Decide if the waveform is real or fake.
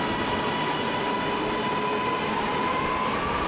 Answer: real